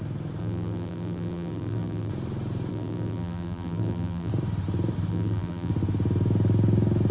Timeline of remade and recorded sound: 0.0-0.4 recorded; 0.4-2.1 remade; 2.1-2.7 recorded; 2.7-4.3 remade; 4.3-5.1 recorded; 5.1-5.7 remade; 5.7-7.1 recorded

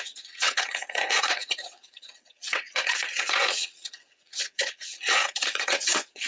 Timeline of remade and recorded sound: 0.0-6.3 remade